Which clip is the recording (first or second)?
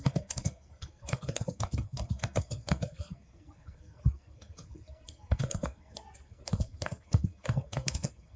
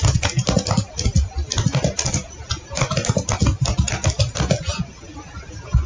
second